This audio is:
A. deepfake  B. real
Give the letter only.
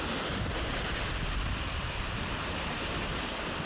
B